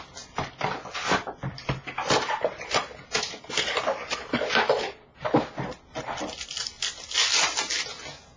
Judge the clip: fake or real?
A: real